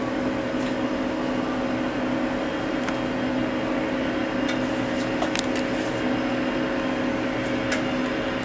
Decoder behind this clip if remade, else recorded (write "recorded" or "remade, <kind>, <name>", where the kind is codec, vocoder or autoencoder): recorded